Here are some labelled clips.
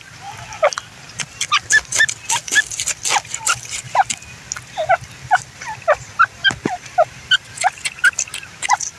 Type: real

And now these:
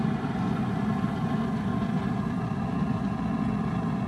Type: real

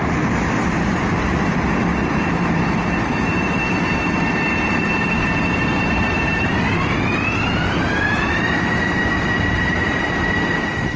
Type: fake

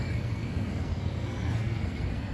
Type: fake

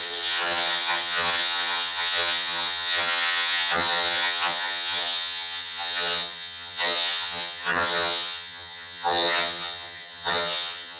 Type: fake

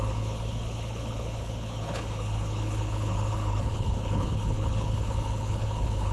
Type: fake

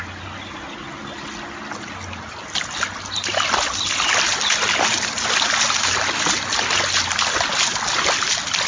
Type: real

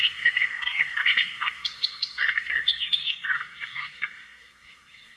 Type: fake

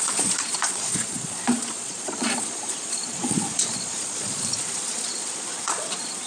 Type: fake